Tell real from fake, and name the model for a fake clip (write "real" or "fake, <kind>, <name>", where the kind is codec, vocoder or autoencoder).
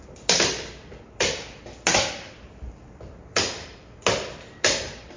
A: fake, vocoder, BigVGAN v2